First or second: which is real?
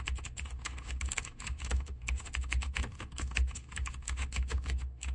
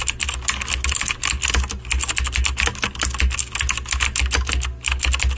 second